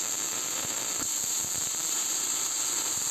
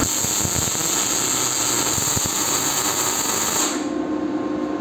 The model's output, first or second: first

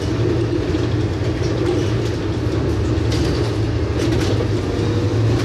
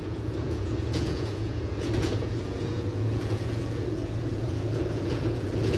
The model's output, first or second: second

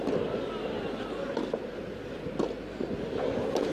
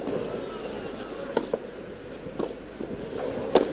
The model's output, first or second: first